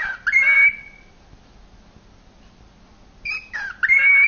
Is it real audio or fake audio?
real